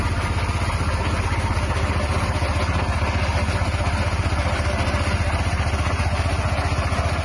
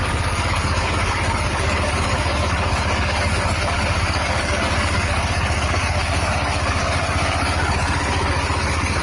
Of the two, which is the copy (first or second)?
second